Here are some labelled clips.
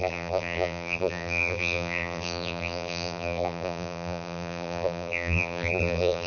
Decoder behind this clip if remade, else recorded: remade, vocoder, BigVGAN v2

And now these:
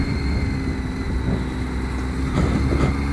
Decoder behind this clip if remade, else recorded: recorded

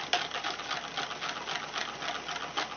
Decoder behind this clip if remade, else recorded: recorded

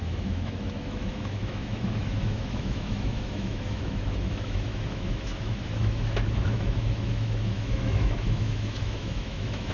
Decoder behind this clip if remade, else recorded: remade, autoencoder, DAC-VAE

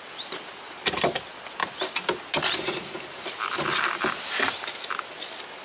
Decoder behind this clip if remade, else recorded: recorded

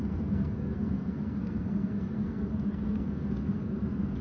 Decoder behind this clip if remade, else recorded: remade, codec, SNAC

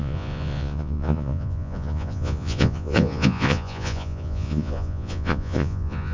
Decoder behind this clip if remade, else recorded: remade, vocoder, Vocos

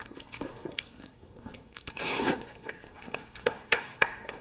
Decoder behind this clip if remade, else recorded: remade, codec, SNAC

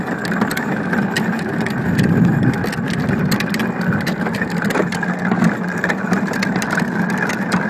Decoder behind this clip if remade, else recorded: recorded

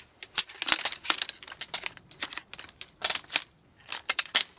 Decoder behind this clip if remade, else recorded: recorded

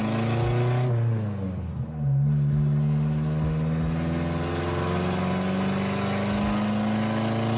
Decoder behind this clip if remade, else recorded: recorded